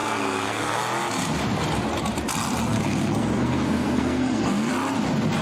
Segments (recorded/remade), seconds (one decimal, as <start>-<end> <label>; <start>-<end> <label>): 0.0-0.8 remade; 0.8-2.7 recorded; 2.7-4.7 remade; 4.7-5.4 recorded